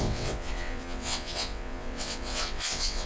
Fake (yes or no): yes